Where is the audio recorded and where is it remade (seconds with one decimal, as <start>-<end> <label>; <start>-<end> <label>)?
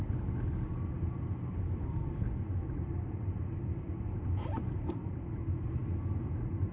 0.0-6.7 recorded